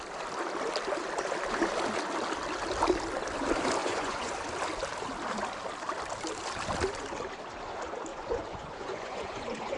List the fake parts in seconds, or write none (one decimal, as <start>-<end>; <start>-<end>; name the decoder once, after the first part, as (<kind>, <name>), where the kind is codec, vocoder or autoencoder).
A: 3.8-4.3 (vocoder, Vocos); 8.1-9.8